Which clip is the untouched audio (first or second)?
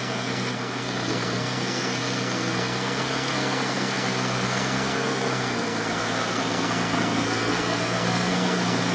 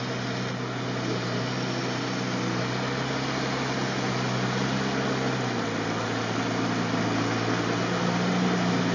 second